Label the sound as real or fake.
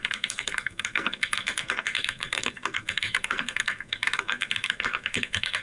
fake